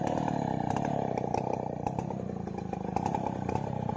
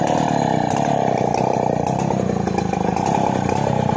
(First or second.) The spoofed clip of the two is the first